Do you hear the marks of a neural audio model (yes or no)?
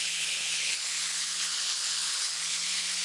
yes